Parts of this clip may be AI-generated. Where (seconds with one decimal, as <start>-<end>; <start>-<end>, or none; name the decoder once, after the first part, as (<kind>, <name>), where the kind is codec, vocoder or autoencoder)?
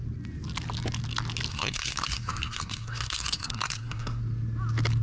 1.5-4.2 (codec, SNAC)